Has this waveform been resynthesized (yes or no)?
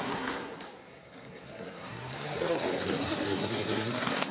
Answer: yes